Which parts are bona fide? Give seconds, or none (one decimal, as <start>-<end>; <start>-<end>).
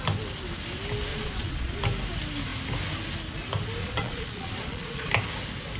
0.0-1.1; 1.8-3.8; 5.1-5.8